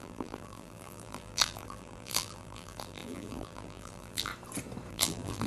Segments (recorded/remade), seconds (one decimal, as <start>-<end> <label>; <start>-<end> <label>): 0.0-4.3 remade; 4.3-4.9 recorded; 4.9-5.5 remade